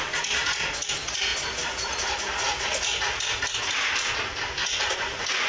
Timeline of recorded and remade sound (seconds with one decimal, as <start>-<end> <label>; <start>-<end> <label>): 0.0-4.6 recorded; 4.6-5.5 remade